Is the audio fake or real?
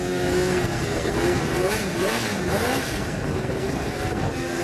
fake